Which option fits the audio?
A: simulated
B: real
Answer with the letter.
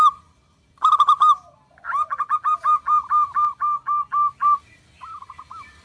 B